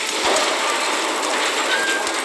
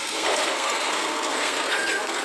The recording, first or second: first